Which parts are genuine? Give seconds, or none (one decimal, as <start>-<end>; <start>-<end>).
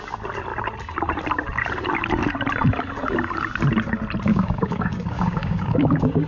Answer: 0.0-4.3